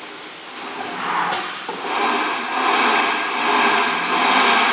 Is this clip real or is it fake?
real